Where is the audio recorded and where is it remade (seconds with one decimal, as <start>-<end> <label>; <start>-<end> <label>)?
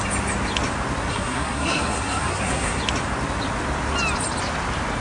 0.0-1.1 recorded; 1.1-2.8 remade; 2.8-5.0 recorded